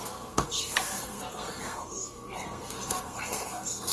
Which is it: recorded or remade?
remade